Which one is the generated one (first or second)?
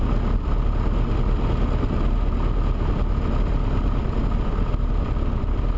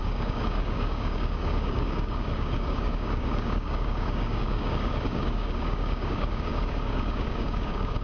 second